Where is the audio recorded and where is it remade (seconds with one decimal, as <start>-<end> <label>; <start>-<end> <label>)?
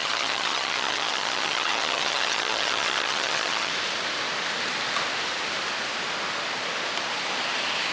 0.0-3.7 remade; 3.7-7.9 recorded